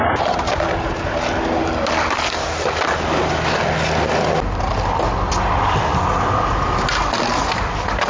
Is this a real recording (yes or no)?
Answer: yes